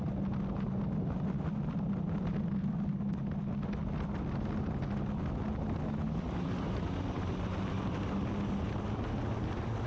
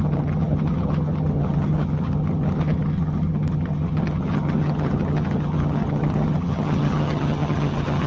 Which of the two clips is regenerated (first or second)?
second